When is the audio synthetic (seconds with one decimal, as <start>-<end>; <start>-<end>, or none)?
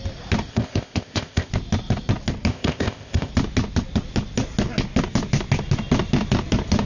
0.5-1.5; 2.5-3.3